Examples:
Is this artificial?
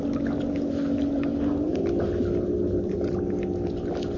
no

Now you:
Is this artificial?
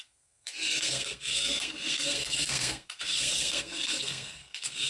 yes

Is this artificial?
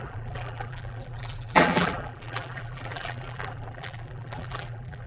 yes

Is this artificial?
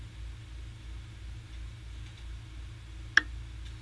no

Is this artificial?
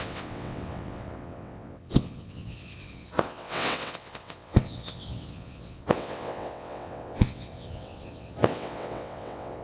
yes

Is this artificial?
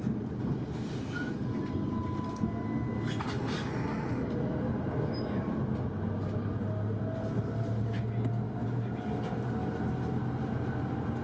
no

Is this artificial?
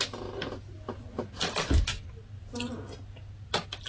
no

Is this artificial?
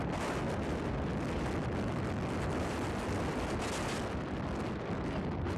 no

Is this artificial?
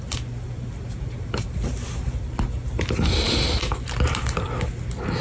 no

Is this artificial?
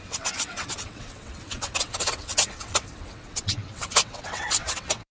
yes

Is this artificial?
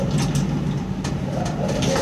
no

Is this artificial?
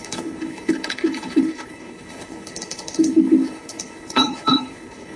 yes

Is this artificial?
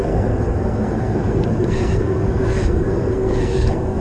yes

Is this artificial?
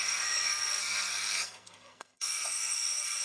yes